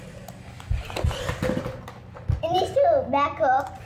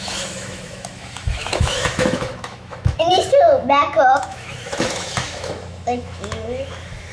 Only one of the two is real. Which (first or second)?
first